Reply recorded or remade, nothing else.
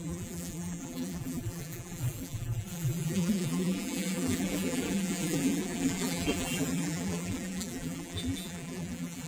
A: remade